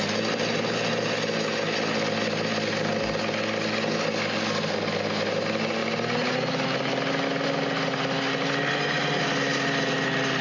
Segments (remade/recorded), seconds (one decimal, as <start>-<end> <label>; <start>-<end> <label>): 0.0-10.4 recorded